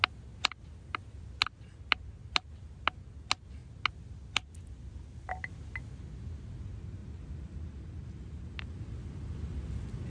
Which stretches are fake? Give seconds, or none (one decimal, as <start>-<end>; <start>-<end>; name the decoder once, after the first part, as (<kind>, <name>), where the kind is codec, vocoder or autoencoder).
7.0-7.8 (vocoder, BigVGAN v2)